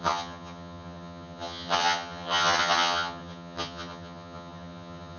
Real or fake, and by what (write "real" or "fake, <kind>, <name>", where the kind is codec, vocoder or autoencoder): fake, vocoder, HiFi-GAN